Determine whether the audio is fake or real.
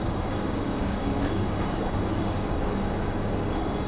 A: fake